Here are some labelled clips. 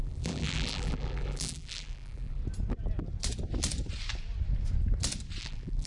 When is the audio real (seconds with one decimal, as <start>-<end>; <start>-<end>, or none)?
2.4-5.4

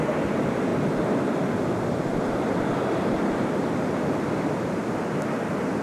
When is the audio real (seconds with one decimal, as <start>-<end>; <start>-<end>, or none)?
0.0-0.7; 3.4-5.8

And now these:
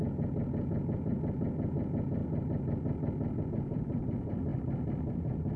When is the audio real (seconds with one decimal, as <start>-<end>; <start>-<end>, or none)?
2.2-3.4; 4.5-5.1